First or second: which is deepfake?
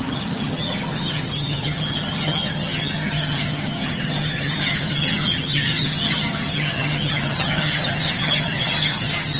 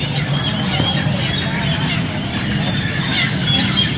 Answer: first